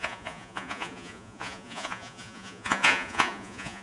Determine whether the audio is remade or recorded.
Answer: remade